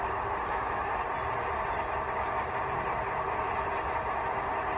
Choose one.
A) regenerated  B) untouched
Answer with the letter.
B